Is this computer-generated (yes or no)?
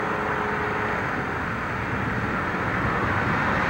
no